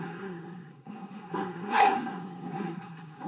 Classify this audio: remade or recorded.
remade